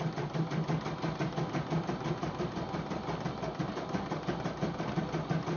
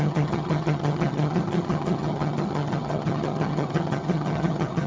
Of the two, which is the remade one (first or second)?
second